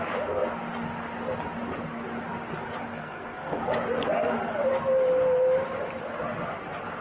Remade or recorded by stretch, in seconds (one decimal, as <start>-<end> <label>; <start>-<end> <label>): 0.0-2.9 recorded; 2.9-3.6 remade; 3.6-7.0 recorded